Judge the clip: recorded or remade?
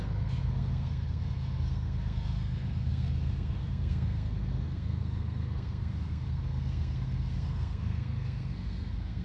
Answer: remade